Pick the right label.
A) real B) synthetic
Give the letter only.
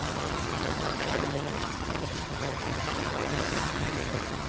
B